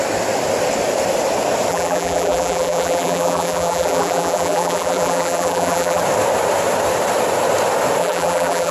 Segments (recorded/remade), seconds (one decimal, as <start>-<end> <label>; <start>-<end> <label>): 0.0-1.7 recorded; 1.7-6.0 remade; 6.0-8.0 recorded; 8.0-8.7 remade